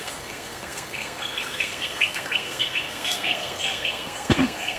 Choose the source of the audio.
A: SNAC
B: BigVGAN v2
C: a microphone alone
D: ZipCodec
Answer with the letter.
A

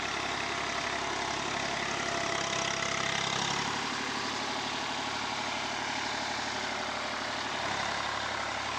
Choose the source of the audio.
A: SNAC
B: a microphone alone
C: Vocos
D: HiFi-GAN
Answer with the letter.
B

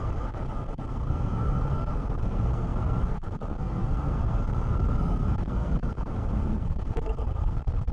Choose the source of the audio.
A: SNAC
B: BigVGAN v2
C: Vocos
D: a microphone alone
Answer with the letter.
A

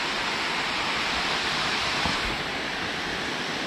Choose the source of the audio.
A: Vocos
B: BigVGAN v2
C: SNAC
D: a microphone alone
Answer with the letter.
D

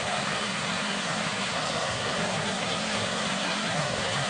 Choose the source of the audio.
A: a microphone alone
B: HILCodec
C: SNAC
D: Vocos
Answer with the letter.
C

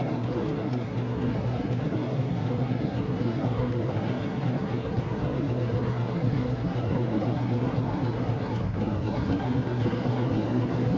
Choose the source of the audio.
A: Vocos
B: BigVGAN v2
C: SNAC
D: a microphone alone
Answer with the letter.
C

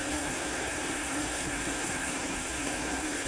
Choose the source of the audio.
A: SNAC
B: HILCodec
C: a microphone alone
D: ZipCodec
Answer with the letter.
A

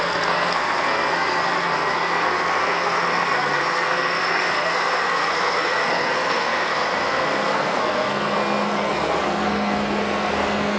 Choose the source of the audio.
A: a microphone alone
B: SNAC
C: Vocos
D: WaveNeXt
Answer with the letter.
B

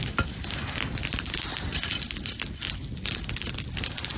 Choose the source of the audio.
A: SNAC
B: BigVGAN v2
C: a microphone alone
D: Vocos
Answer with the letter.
C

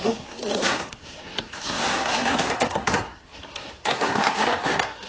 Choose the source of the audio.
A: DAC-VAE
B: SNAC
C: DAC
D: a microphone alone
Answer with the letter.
B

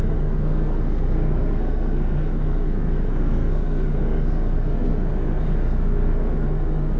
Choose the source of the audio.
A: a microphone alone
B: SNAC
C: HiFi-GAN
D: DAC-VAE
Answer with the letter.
B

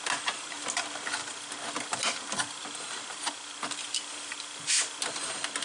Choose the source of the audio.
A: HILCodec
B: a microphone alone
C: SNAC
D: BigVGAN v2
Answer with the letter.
B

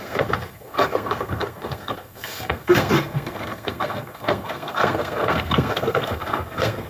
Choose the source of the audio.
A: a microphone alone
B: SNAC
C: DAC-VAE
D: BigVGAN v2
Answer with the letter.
B